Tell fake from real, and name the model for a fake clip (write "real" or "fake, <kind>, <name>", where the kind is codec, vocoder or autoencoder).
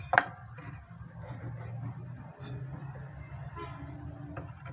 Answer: fake, vocoder, BigVGAN v2